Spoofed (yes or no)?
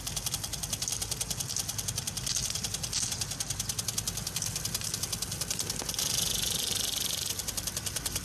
no